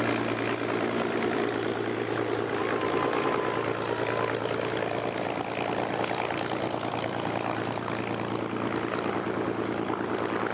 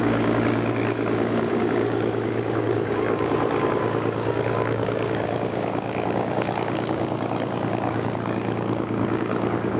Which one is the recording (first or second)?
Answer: first